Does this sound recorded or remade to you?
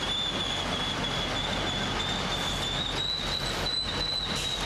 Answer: recorded